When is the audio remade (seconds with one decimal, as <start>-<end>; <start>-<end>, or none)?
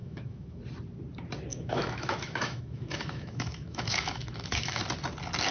0.0-0.6; 1.5-4.8